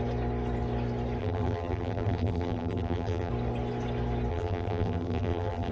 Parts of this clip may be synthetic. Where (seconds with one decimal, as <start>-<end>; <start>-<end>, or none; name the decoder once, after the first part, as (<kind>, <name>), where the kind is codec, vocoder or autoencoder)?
1.2-3.3 (vocoder, BigVGAN v2); 4.3-5.7